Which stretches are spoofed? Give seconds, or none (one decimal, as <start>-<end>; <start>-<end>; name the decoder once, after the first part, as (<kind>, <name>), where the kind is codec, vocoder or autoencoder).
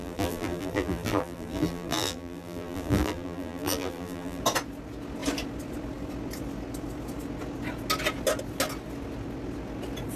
0.0-4.4 (vocoder, BigVGAN v2)